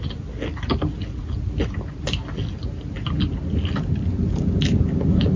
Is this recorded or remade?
recorded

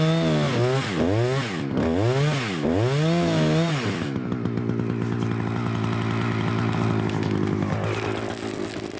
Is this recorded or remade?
recorded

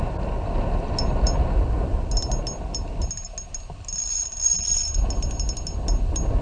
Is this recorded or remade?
recorded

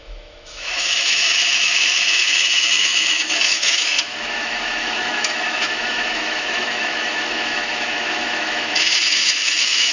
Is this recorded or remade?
remade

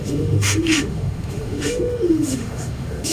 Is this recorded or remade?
remade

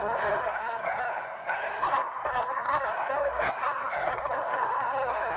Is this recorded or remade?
remade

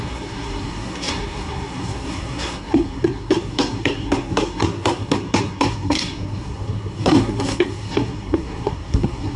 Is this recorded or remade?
remade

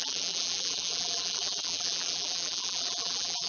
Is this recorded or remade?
remade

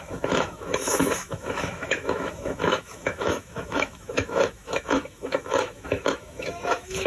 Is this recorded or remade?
remade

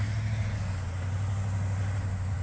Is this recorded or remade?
recorded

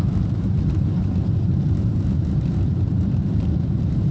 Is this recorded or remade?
remade